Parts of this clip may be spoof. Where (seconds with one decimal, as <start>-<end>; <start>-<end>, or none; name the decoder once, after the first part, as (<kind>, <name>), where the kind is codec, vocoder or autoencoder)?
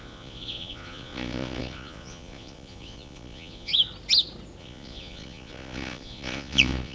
0.0-3.7 (vocoder, Vocos); 4.6-6.9